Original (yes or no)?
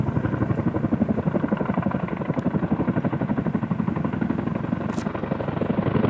yes